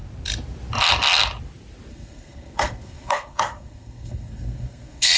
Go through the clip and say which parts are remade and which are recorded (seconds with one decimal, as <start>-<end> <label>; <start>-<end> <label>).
0.0-1.9 recorded; 1.9-5.2 remade